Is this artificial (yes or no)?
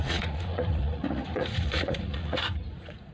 yes